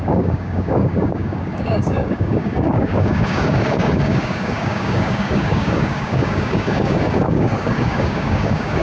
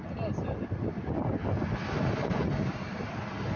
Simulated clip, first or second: first